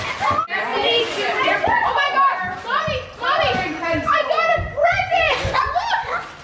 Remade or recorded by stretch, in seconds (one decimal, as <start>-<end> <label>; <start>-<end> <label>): 0.0-0.7 recorded; 0.7-1.9 remade; 1.9-2.7 recorded; 2.7-5.8 remade; 5.8-6.4 recorded